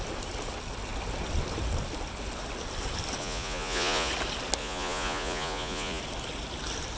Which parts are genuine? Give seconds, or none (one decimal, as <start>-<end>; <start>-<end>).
0.0-3.2; 4.1-4.6; 6.0-7.0